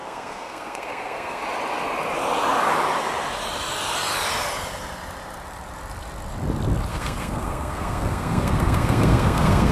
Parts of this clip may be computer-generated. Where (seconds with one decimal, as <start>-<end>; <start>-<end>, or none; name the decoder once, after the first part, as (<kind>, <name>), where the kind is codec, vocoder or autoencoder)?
0.0-1.4 (codec, SNAC); 6.9-9.7